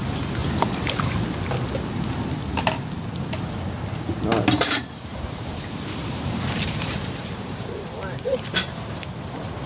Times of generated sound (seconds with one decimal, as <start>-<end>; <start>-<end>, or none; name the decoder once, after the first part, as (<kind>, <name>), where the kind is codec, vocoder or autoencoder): 5.1-9.2 (vocoder, BigVGAN v2)